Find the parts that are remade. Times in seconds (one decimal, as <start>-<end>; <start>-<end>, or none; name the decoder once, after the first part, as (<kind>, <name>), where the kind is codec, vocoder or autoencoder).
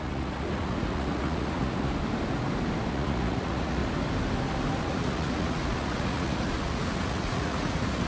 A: 0.0-1.9 (vocoder, Vocos); 2.9-3.8; 4.8-8.1